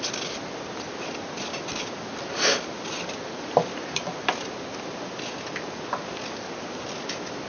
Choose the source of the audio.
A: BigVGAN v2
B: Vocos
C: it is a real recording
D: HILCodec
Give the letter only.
C